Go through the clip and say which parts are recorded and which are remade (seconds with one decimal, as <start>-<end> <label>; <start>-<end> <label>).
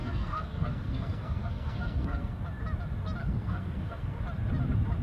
0.0-2.4 remade; 2.4-3.2 recorded; 3.2-4.2 remade; 4.2-5.0 recorded